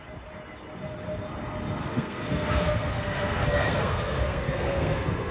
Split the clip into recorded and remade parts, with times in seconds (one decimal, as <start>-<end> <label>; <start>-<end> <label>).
0.0-1.8 recorded; 1.8-5.3 remade